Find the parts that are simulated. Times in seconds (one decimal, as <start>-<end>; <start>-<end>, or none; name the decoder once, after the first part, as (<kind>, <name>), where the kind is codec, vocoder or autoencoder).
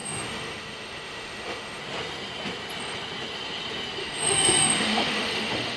0.0-1.8 (autoencoder, DAC-VAE); 4.0-5.8